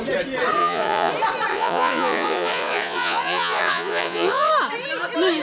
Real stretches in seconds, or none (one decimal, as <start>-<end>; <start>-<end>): 0.0-0.6; 1.1-1.5; 4.5-5.4